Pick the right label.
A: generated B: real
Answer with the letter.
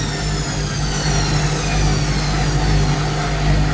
B